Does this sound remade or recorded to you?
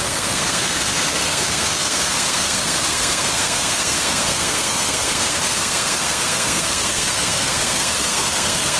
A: remade